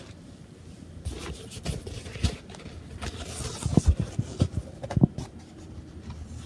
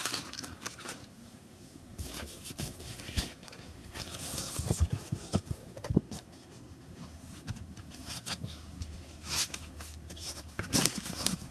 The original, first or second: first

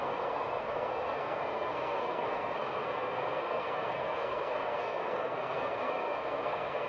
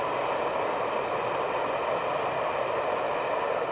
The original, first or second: second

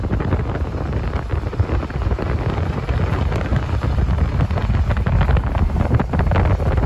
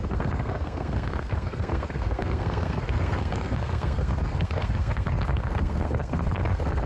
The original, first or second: first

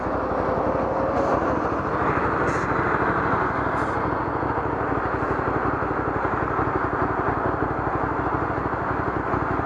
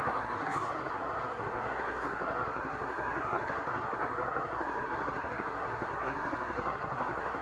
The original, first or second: first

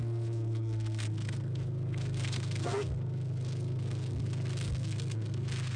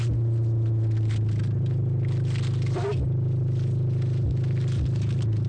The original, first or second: second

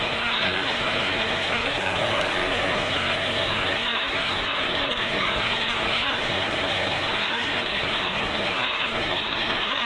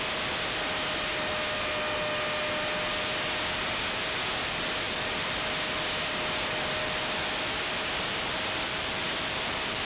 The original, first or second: second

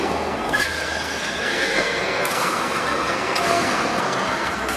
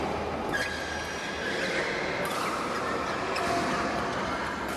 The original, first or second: second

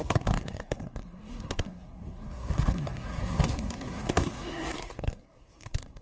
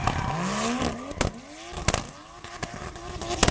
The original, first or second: second